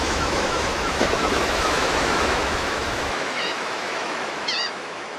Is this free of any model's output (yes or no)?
no